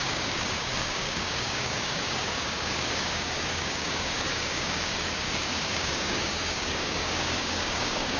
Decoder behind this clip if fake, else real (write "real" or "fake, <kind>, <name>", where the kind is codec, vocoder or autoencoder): fake, codec, DAC